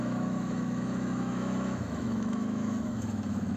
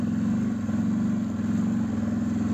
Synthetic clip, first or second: first